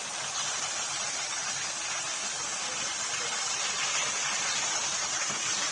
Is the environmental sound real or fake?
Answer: real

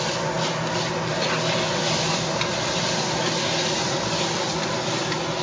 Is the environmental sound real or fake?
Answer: real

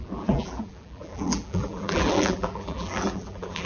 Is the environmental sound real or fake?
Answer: fake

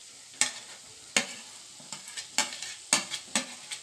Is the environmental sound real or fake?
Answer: real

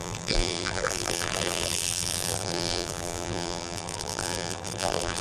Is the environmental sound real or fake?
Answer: fake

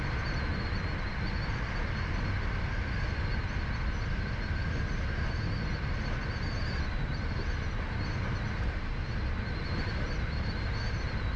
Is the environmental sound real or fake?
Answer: real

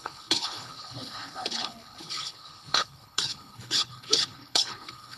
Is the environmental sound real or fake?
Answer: fake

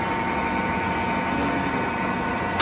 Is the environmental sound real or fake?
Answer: real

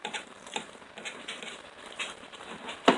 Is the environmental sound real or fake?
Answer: fake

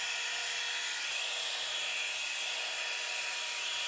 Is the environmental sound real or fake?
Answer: real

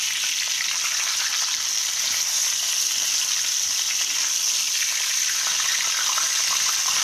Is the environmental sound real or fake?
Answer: real